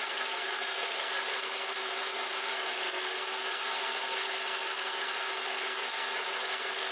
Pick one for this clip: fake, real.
fake